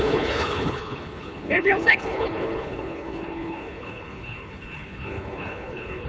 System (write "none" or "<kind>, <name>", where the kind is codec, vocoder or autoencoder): codec, HILCodec